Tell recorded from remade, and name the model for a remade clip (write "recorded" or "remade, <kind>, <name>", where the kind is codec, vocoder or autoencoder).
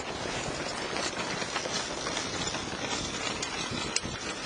recorded